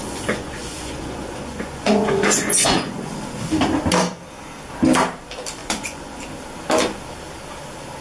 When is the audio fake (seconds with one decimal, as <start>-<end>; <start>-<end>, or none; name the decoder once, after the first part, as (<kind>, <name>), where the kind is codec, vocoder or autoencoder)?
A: 0.0-3.1 (vocoder, Vocos); 5.6-6.2